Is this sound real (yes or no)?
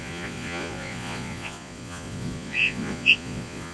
no